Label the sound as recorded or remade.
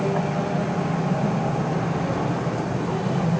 recorded